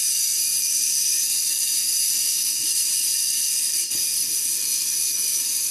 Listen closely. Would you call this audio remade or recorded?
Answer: remade